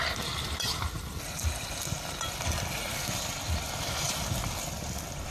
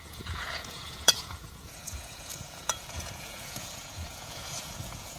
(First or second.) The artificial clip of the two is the second